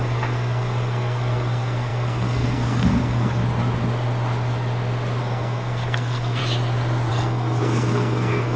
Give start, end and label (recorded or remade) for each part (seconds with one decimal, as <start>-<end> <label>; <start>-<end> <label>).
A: 0.0-3.4 remade; 3.4-5.2 recorded; 5.2-6.4 remade; 6.4-7.1 recorded; 7.1-8.6 remade